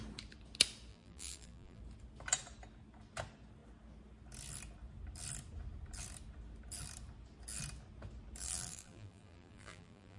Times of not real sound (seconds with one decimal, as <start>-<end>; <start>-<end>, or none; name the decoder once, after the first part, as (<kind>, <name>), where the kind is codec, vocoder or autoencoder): 0.9-1.8 (vocoder, BigVGAN v2); 8.4-10.2